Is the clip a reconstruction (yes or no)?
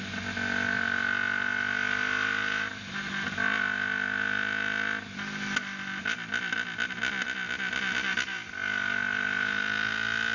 no